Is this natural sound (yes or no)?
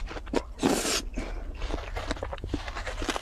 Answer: yes